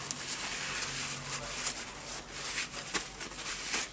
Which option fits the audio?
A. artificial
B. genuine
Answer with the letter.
B